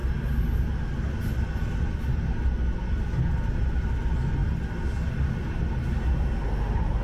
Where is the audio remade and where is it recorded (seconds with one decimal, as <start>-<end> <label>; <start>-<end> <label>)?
0.0-7.0 recorded